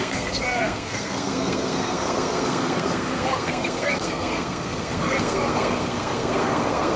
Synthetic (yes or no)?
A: yes